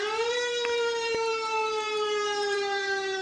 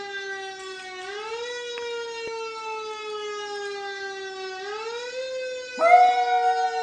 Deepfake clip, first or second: first